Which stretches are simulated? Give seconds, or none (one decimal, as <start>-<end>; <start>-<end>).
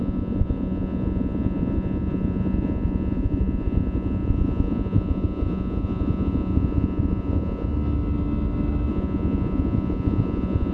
0.0-7.7; 8.9-10.7